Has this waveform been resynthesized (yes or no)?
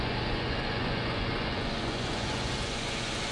yes